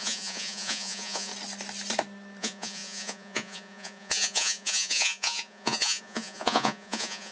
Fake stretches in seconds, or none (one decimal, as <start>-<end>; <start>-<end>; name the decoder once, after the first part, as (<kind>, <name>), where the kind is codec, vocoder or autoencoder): 0.0-1.3 (vocoder, Vocos); 2.4-7.3